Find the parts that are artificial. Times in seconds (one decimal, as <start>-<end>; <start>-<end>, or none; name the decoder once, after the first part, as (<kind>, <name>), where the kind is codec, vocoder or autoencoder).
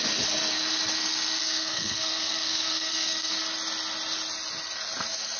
1.4-3.3 (codec, SNAC)